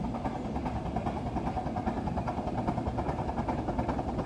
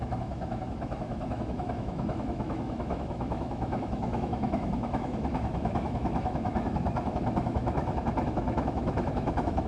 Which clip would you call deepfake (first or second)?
second